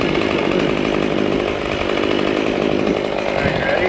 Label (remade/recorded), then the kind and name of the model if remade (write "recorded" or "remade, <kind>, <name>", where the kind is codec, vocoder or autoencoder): recorded